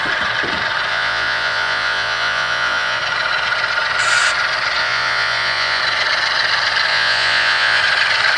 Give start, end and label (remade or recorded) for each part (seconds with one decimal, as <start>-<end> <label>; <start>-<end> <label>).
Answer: 0.0-0.9 recorded; 0.9-3.0 remade; 3.0-4.8 recorded; 4.8-5.8 remade; 5.8-6.9 recorded; 6.9-7.8 remade; 7.8-8.4 recorded